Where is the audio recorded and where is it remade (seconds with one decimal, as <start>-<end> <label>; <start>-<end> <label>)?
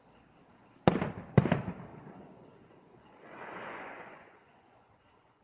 0.0-1.9 recorded; 1.9-5.4 remade